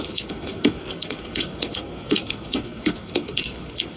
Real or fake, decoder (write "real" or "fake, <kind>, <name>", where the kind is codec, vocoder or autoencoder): fake, codec, SNAC